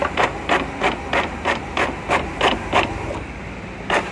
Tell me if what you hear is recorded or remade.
recorded